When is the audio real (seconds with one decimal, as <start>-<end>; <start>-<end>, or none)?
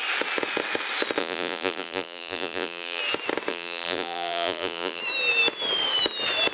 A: 0.0-1.2; 3.0-3.5; 5.0-6.5